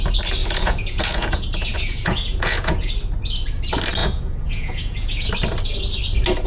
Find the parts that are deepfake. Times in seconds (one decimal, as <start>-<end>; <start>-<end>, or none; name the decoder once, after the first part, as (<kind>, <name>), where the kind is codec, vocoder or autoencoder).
0.4-2.9 (vocoder, Vocos); 4.0-5.3